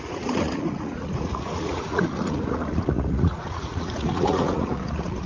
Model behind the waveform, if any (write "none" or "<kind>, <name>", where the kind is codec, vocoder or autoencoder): vocoder, Vocos